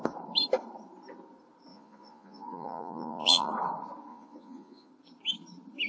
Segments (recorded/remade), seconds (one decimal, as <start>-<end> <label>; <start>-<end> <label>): 0.0-1.7 recorded; 1.7-3.5 remade; 3.5-4.1 recorded; 4.1-4.9 remade; 4.9-5.9 recorded